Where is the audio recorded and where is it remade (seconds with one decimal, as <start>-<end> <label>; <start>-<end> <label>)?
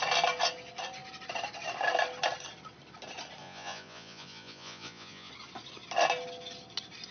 0.0-3.4 recorded; 3.4-5.3 remade; 5.3-7.1 recorded